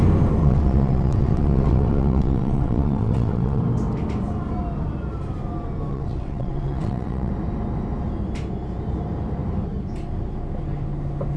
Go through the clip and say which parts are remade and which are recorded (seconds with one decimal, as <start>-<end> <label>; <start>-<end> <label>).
0.0-0.4 recorded; 0.4-3.6 remade; 3.6-5.9 recorded; 5.9-7.3 remade; 7.3-11.4 recorded